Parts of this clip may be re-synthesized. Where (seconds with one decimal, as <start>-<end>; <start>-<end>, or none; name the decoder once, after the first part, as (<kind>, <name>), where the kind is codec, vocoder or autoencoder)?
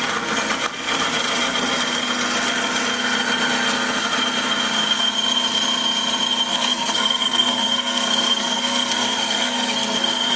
6.5-10.4 (codec, SNAC)